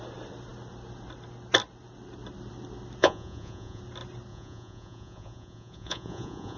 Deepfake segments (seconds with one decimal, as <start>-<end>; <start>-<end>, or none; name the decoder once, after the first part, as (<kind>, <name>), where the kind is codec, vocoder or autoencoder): 3.0-3.8 (vocoder, Vocos); 4.3-6.6